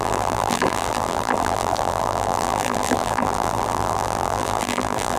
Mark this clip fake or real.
fake